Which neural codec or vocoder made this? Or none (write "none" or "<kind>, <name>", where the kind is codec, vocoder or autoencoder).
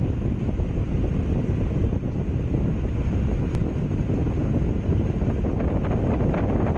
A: none